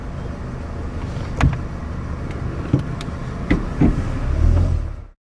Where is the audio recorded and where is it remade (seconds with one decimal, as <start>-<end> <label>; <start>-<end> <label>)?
0.0-5.4 recorded